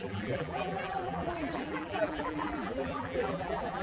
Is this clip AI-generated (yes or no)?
yes